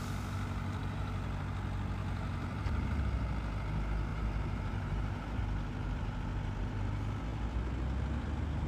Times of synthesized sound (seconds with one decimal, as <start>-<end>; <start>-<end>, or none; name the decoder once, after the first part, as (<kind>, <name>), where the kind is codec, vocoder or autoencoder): 0.8-1.4 (vocoder, BigVGAN v2); 2.0-3.0; 4.1-5.4